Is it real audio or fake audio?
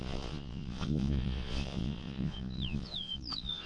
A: fake